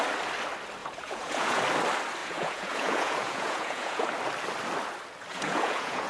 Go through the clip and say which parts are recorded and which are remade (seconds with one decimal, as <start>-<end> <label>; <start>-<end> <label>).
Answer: 0.0-0.8 recorded; 0.8-1.6 remade; 1.6-2.2 recorded; 2.2-4.1 remade; 4.1-5.3 recorded; 5.3-6.1 remade